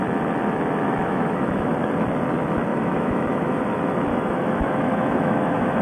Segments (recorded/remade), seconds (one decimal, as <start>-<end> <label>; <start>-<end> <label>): 0.0-1.0 recorded; 1.0-1.7 remade; 1.7-2.7 recorded; 2.7-3.6 remade; 3.6-4.1 recorded; 4.1-5.8 remade